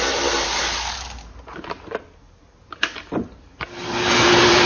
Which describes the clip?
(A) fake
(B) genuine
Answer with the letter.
A